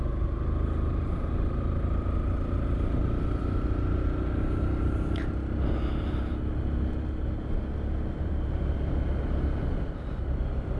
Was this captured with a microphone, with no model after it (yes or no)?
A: yes